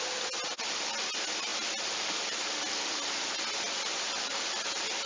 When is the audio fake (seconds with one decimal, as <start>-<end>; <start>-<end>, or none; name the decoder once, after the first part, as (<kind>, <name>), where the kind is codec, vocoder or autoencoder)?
none